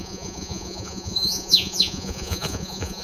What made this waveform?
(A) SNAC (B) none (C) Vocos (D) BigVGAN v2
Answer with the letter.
C